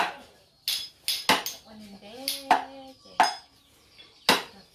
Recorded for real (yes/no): yes